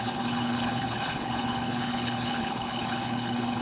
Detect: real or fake fake